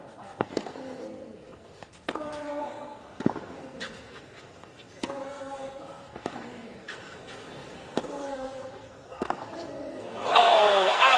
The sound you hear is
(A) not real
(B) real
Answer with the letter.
A